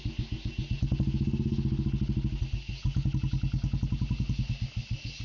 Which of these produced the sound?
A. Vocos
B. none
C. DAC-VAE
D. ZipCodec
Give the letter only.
B